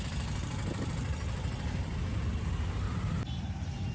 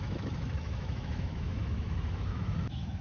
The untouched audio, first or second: first